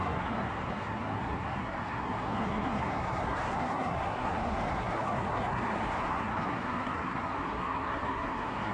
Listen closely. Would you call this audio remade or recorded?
remade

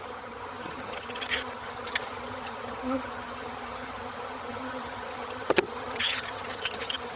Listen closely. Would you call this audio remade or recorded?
remade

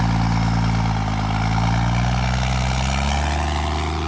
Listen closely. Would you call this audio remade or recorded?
recorded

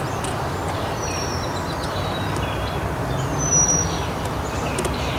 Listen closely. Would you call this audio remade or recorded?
recorded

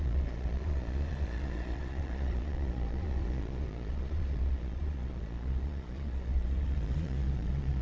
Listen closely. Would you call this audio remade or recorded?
remade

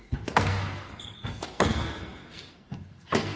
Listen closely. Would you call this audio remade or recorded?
remade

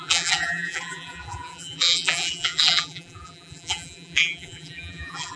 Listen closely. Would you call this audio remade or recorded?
remade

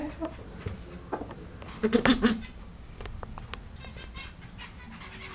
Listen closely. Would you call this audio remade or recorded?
recorded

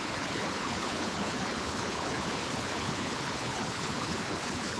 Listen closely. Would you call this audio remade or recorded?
remade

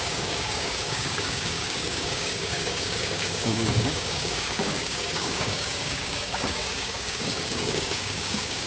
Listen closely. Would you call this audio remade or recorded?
remade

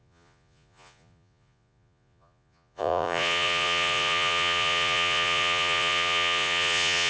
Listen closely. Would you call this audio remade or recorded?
remade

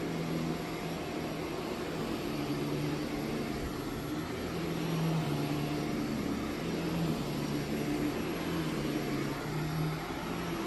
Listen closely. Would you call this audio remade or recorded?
recorded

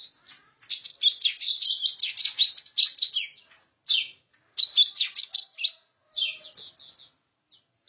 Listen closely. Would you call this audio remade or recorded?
recorded